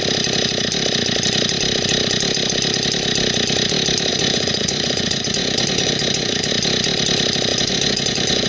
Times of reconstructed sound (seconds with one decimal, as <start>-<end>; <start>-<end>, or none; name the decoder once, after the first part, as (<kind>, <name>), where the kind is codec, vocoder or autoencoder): 4.1-6.5 (vocoder, Vocos); 7.5-8.5